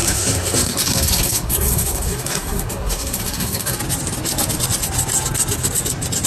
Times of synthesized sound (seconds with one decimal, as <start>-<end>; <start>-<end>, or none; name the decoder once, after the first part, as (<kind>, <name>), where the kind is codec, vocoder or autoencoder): 0.0-3.8 (codec, SNAC)

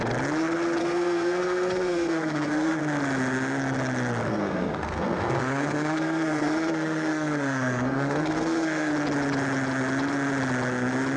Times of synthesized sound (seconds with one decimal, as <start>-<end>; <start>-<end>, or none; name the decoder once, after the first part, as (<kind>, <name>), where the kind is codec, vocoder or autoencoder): 0.8-2.8 (codec, SNAC); 4.3-8.9

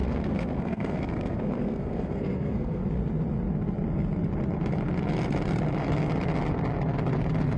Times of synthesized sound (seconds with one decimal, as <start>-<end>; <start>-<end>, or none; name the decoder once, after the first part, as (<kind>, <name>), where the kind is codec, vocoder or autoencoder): 0.0-2.8 (codec, SNAC)